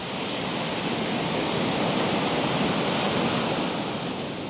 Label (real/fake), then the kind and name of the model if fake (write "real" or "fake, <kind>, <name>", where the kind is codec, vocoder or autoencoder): real